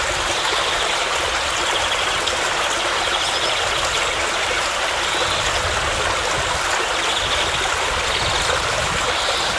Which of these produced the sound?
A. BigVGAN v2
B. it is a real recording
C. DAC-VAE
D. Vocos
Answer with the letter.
B